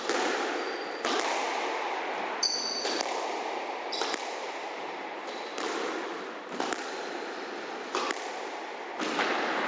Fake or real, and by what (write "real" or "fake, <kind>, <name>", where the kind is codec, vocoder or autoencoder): real